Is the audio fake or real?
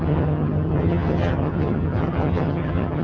fake